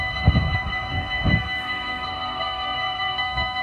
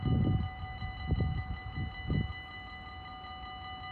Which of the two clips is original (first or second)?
second